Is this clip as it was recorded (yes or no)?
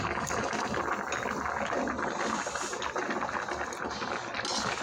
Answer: yes